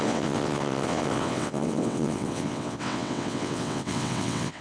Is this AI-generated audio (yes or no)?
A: yes